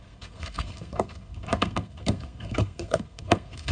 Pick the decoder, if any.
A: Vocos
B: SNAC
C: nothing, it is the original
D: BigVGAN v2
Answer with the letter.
B